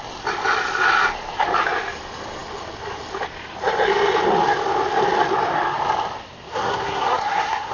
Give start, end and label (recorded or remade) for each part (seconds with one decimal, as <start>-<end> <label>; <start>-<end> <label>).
0.0-6.5 recorded; 6.5-7.7 remade